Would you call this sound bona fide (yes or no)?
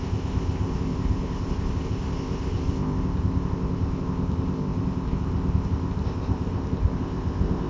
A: no